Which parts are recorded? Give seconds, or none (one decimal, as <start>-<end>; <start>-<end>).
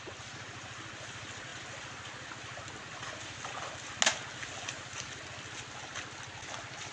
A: 0.0-6.9